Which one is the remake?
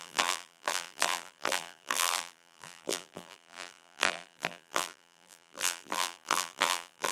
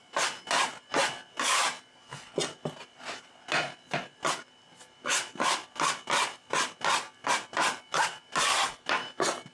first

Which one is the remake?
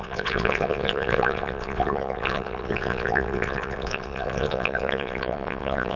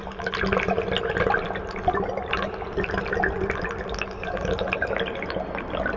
first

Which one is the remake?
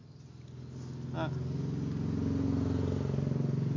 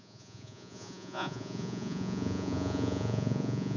second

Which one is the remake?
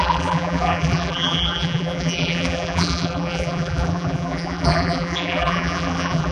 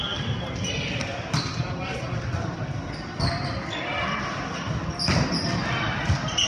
first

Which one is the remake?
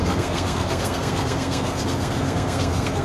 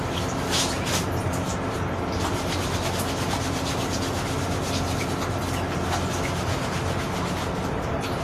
first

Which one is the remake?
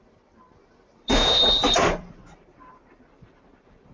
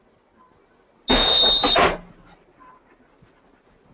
first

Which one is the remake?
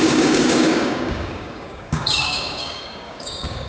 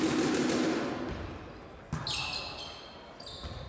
first